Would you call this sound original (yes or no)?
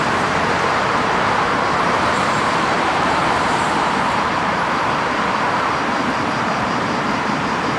no